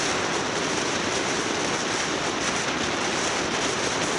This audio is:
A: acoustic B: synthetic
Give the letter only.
A